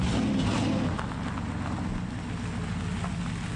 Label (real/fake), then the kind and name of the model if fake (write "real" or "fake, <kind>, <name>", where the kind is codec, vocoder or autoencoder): real